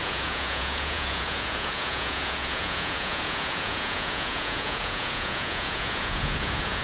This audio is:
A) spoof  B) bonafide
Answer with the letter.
A